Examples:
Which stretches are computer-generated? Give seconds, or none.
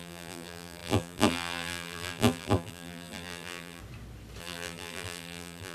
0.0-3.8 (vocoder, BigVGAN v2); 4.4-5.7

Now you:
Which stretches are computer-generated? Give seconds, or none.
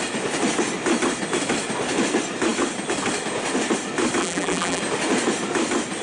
4.2-4.8 (vocoder, BigVGAN v2)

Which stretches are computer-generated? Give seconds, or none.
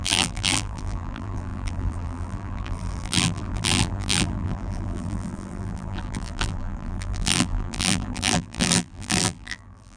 0.0-10.0 (vocoder, BigVGAN v2)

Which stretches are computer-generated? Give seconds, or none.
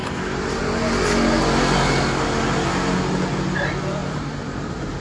0.0-0.6 (vocoder, BigVGAN v2); 4.0-5.0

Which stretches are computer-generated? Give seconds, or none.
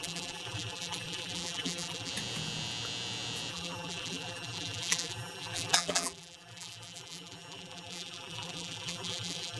0.0-2.1 (vocoder, BigVGAN v2); 3.5-9.6